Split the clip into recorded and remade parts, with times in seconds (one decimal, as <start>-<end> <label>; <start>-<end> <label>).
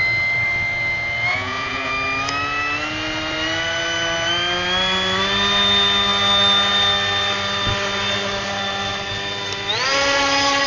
0.0-1.3 recorded; 1.3-1.9 remade; 1.9-10.7 recorded